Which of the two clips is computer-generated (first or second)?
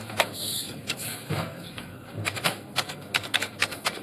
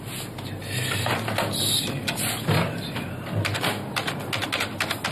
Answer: first